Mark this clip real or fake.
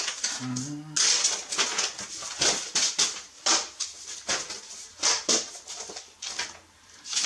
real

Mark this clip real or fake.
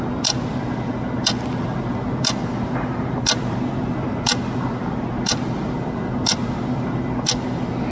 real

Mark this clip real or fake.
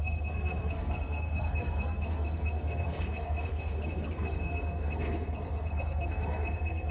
fake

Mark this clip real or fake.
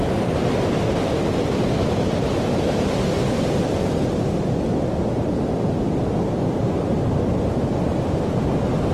real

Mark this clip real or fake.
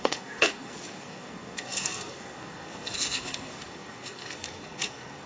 fake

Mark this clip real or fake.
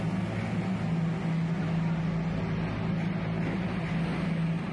real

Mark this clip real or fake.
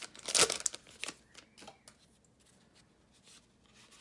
real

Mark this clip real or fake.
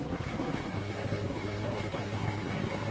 fake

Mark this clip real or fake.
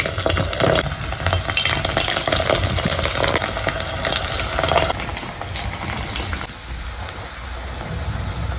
real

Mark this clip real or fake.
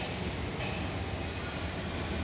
real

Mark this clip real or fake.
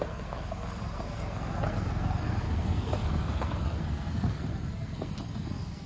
fake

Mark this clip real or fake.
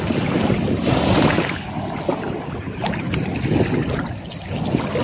real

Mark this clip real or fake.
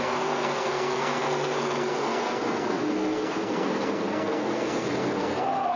fake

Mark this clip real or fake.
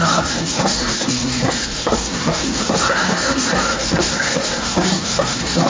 fake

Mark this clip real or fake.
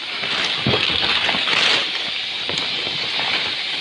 real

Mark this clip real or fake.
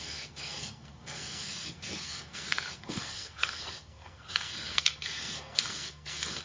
fake